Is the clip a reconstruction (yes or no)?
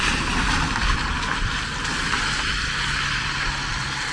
no